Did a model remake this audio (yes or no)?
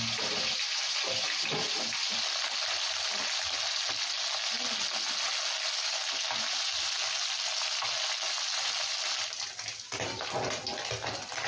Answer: no